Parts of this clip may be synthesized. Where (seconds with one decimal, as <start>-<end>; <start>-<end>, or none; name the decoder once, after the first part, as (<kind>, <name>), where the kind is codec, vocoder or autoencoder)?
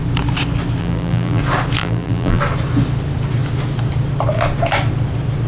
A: 0.8-1.4 (vocoder, BigVGAN v2); 1.8-2.4